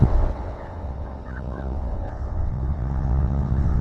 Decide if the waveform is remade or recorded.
remade